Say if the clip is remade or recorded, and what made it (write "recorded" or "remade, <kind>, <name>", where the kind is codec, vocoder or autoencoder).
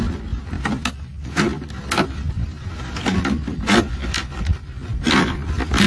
recorded